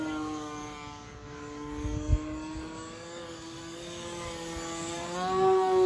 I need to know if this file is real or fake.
fake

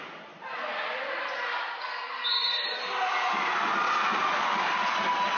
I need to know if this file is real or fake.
real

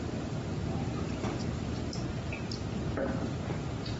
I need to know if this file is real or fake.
real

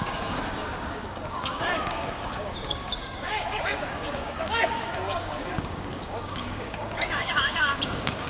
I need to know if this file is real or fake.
fake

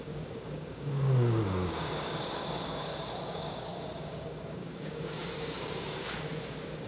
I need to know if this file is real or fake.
fake